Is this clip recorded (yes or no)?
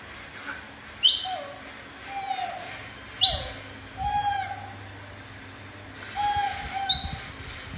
yes